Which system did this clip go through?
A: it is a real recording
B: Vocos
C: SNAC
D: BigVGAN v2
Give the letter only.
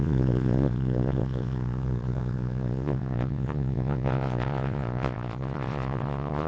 B